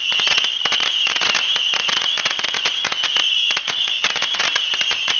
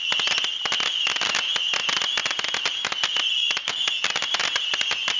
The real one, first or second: second